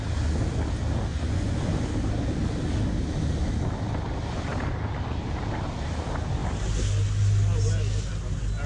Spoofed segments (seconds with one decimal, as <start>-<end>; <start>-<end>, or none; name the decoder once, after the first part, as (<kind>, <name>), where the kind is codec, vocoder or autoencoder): 1.1-1.7 (vocoder, Vocos)